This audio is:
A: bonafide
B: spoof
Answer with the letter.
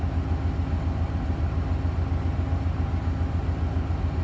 A